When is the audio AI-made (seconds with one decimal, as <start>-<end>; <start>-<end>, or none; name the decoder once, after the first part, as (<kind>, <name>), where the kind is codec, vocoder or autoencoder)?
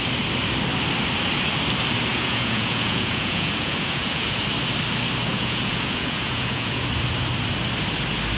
2.1-4.4 (vocoder, Vocos); 5.3-6.9